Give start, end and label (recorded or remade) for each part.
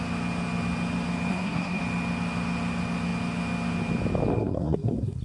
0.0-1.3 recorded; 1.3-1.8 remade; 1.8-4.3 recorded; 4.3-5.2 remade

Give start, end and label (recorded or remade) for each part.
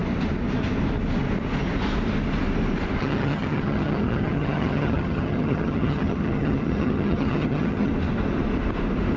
0.0-3.0 recorded; 3.0-7.9 remade; 7.9-9.2 recorded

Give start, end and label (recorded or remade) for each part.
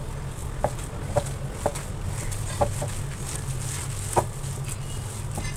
0.0-5.6 recorded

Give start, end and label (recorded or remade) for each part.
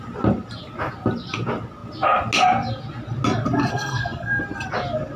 0.0-3.7 recorded; 3.7-4.4 remade; 4.4-5.2 recorded